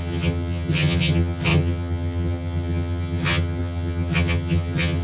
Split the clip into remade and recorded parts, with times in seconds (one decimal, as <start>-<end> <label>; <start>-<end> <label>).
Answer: 0.0-5.0 remade